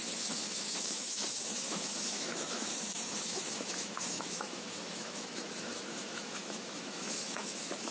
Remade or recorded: remade